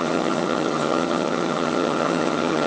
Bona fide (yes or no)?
no